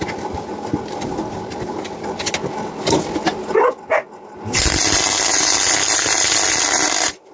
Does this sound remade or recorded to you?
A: recorded